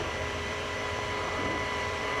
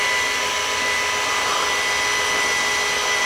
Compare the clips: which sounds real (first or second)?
second